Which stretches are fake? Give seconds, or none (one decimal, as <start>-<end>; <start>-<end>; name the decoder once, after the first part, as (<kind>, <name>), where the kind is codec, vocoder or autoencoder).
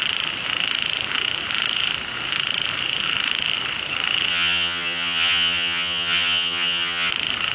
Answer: 4.3-7.1 (vocoder, HiFi-GAN)